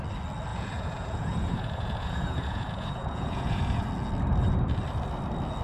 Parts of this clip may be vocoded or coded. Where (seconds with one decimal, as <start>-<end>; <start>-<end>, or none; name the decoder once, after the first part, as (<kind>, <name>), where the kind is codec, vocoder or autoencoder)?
0.5-3.9 (vocoder, Vocos)